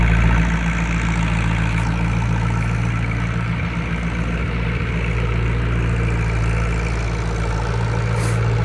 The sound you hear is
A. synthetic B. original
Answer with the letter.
B